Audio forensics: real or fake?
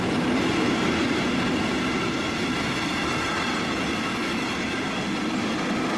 real